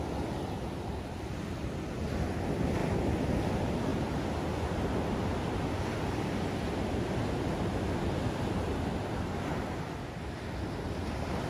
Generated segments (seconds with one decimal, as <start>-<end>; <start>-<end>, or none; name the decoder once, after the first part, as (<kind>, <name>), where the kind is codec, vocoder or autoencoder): 0.0-2.8 (vocoder, BigVGAN v2); 3.5-3.9; 8.2-11.5